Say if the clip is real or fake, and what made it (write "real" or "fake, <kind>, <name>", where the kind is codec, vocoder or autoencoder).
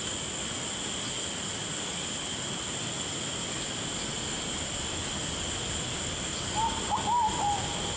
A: real